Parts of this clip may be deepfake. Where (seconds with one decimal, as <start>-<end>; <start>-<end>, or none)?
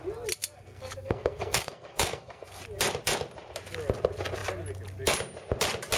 0.4-2.6